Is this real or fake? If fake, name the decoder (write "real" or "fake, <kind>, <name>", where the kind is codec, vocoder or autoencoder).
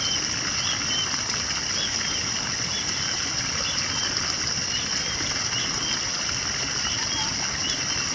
real